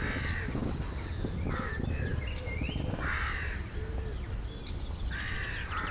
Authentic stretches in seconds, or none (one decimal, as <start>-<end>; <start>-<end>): 0.0-5.9